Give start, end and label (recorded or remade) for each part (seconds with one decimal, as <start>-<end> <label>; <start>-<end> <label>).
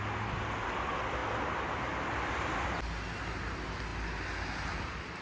0.0-5.2 recorded